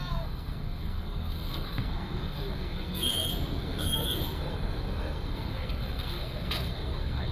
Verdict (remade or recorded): remade